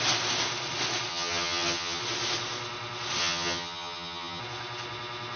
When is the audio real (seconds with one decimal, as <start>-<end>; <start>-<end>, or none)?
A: 0.0-1.1; 2.0-3.2; 4.4-5.4